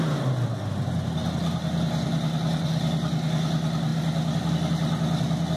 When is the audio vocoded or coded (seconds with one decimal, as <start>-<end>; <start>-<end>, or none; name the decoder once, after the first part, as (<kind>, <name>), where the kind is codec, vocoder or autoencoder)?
none